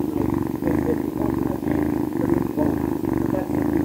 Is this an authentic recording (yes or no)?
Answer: yes